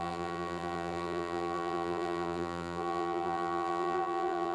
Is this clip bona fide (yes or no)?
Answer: no